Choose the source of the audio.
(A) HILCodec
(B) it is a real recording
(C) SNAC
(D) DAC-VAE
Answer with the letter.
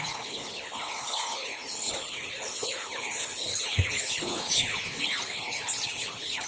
A